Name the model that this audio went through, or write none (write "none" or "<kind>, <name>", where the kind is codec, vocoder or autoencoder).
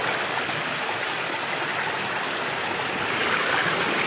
none